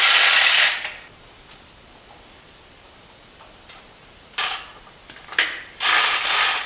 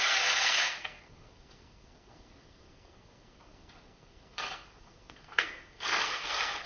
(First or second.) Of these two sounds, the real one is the first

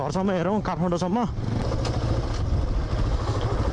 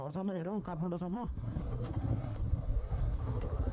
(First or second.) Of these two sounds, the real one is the first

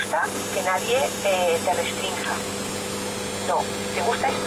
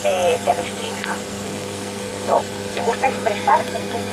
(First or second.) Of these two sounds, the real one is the first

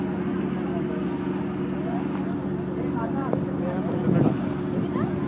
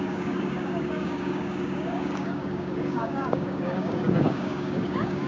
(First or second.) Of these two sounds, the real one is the first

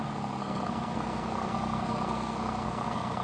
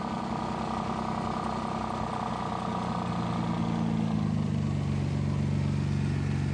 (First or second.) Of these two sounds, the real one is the second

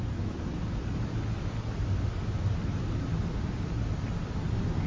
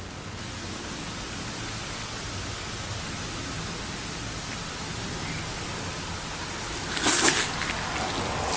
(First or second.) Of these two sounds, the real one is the second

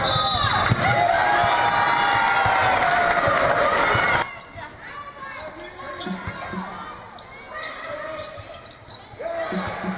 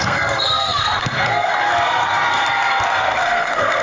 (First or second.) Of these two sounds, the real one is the first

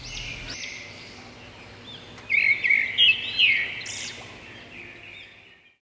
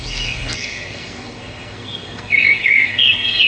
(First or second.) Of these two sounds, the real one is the first